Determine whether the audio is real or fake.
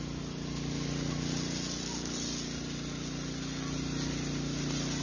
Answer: real